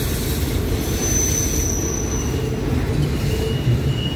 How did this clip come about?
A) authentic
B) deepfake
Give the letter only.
A